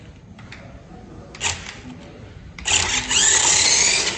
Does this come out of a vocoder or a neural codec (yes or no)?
no